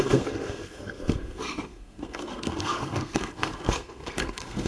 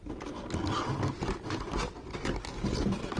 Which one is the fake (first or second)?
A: first